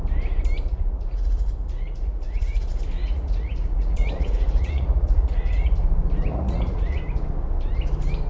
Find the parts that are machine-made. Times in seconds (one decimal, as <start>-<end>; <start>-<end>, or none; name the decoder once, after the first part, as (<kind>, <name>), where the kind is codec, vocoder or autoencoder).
0.7-2.6 (vocoder, Vocos); 3.0-5.8; 6.3-7.0